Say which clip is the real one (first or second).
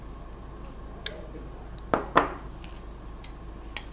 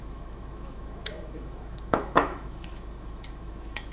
first